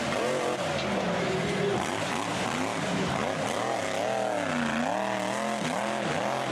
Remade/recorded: recorded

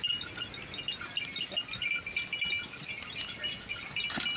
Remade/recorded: recorded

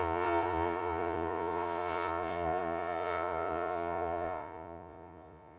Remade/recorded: remade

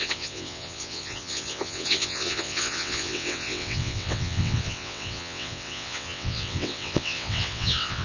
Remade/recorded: remade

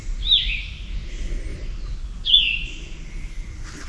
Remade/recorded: recorded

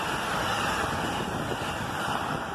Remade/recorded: recorded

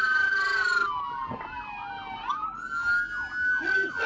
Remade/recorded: recorded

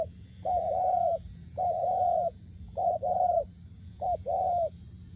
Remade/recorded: remade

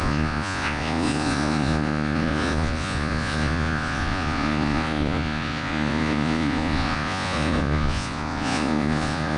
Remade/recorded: remade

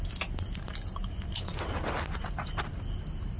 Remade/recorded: recorded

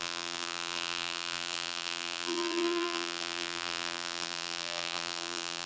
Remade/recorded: remade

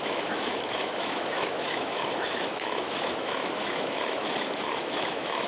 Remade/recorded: remade